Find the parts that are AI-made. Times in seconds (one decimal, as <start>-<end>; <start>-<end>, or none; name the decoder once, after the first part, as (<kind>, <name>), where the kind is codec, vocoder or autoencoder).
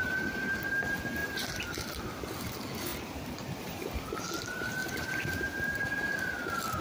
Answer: 1.2-1.9 (vocoder, BigVGAN v2); 2.9-4.2; 4.8-6.8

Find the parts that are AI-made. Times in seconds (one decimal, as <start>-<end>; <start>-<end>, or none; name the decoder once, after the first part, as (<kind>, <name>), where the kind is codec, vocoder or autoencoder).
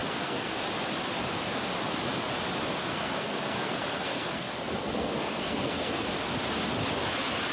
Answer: 0.0-0.6 (codec, SNAC); 2.8-6.1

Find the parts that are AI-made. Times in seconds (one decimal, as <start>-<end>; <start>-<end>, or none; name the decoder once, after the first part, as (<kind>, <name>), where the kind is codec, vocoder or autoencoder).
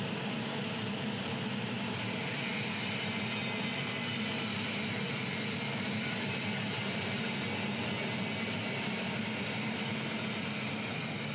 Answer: none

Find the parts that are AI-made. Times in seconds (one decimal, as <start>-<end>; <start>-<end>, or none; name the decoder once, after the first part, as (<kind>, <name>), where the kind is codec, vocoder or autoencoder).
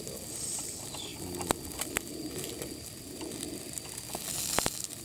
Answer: none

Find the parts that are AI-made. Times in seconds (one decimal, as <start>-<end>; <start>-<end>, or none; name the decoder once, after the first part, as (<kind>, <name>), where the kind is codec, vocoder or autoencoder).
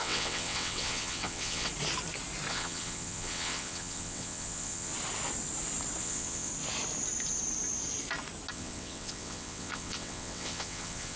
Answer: 0.0-1.7 (vocoder, WaveNeXt); 2.5-4.9; 6.0-6.5; 8.5-11.2